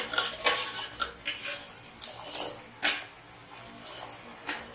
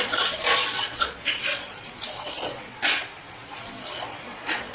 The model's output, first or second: second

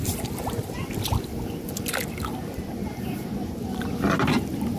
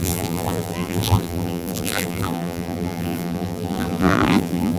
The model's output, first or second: second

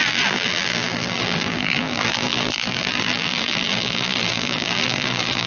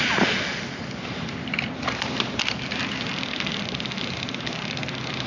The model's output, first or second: first